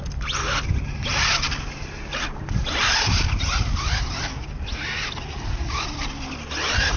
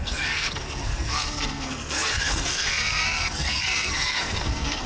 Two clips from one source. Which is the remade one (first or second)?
second